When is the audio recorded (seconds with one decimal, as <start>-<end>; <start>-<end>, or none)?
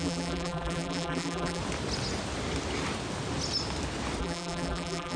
1.6-4.2